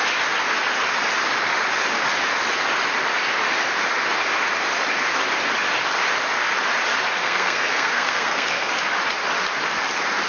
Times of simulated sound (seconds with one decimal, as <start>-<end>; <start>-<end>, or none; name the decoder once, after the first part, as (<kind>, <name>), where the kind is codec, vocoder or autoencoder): 7.2-8.7 (codec, SNAC)